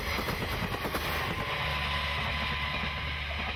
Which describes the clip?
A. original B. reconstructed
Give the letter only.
A